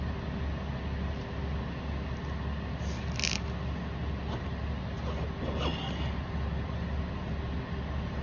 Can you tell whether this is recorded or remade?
recorded